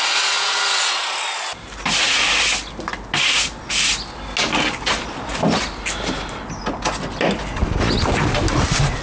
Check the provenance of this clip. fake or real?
real